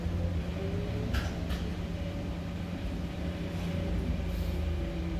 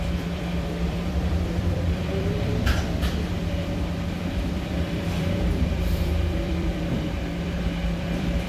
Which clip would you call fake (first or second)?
second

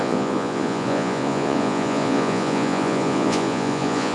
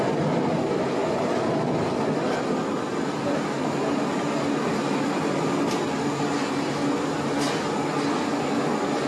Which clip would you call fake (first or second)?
first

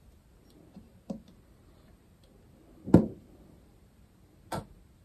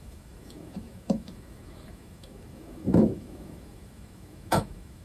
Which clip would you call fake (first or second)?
second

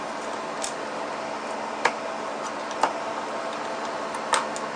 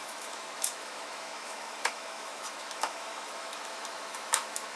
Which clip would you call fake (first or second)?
second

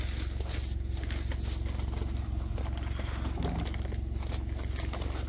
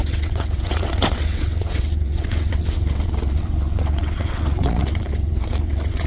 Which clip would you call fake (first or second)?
second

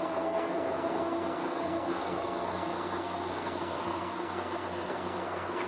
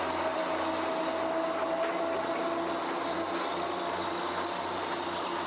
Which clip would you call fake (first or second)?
first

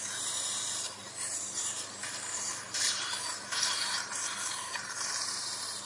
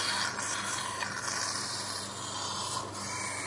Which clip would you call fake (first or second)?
first